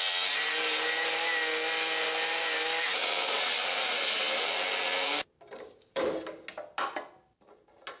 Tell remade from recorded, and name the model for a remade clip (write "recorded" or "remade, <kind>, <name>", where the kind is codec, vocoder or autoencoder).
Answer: recorded